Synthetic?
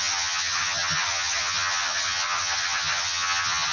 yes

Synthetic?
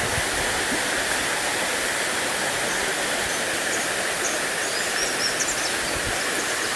no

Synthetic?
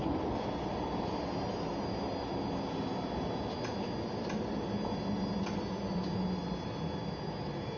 no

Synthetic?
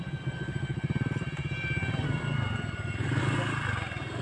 yes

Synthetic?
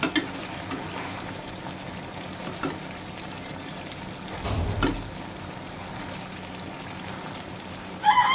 no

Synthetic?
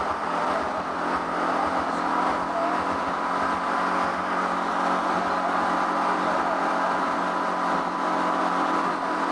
no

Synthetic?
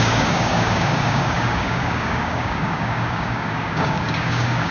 yes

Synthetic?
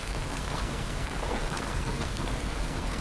yes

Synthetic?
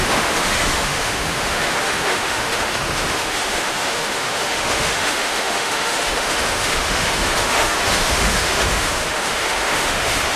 yes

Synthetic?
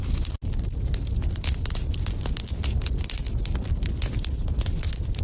no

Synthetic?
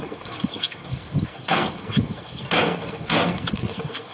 yes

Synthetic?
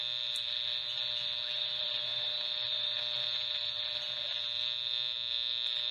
no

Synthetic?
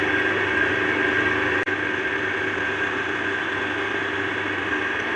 yes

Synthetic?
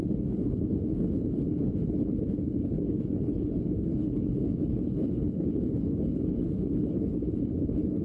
yes